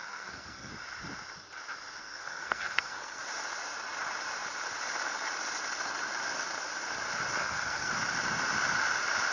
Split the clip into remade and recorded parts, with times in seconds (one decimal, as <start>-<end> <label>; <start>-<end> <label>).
0.0-0.7 remade; 0.7-2.0 recorded; 2.0-3.2 remade; 3.2-7.4 recorded; 7.4-7.9 remade; 7.9-9.3 recorded